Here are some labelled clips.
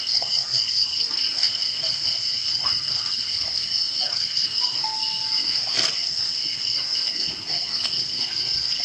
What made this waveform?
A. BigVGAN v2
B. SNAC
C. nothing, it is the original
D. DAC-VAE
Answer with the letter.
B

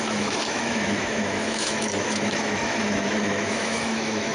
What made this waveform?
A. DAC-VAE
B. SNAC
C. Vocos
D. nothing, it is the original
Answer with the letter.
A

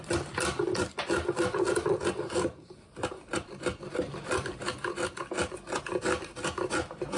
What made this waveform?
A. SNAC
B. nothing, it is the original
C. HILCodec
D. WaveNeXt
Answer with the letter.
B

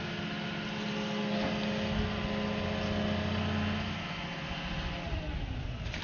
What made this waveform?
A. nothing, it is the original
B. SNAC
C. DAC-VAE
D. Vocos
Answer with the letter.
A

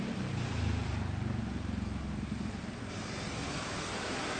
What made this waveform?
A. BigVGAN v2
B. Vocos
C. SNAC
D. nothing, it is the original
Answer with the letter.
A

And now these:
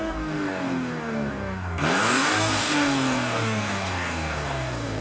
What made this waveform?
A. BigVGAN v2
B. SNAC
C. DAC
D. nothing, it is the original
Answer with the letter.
C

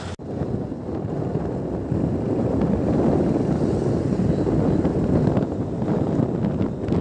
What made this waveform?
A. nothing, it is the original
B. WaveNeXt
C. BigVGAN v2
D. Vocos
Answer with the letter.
A